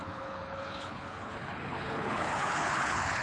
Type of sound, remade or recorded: remade